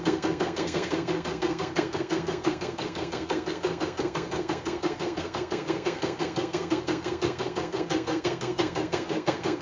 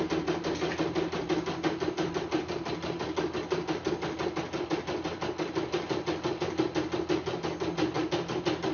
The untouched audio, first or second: second